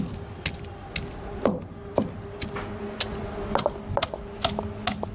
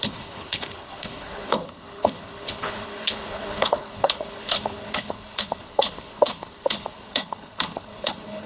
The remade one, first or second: second